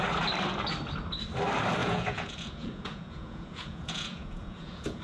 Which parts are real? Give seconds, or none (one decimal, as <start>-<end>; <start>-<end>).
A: 0.0-1.8

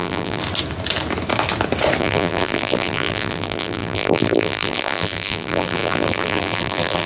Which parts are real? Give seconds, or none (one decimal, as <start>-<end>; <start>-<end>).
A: 0.4-2.0

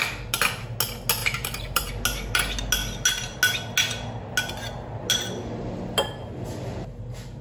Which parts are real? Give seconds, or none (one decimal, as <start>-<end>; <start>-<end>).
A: 0.0-1.2; 1.9-7.4

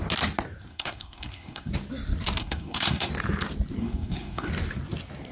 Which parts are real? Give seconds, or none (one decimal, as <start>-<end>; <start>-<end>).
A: 0.0-0.7; 1.7-2.4; 3.1-3.8; 4.5-5.3